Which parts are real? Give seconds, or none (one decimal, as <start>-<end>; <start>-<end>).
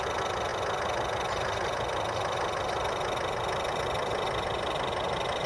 0.0-5.5